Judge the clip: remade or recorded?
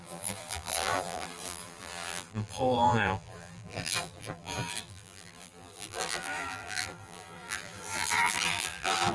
remade